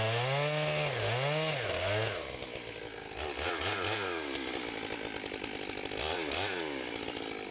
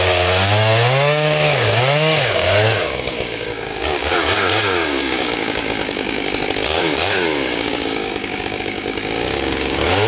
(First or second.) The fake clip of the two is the second